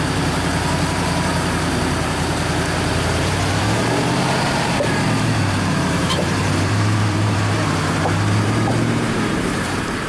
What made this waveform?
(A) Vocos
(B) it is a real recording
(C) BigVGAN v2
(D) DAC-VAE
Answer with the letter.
C